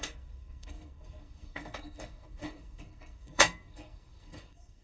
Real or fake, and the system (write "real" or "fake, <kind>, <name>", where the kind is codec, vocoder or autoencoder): fake, codec, SNAC